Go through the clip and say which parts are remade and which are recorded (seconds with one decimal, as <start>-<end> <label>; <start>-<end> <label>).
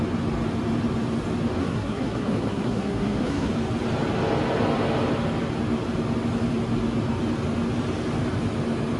0.0-1.6 recorded; 1.6-3.5 remade; 3.5-9.0 recorded